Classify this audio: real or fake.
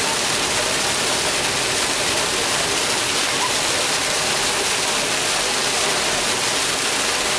real